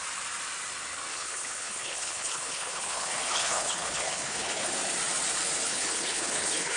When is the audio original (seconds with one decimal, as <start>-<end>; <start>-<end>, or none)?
0.0-1.1; 4.7-5.7